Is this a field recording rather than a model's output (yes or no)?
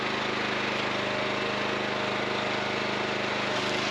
yes